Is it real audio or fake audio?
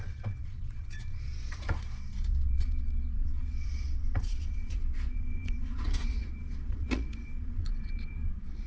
fake